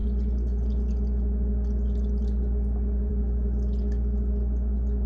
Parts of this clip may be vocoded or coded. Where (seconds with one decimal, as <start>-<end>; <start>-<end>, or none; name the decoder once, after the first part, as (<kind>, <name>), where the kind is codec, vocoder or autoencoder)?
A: none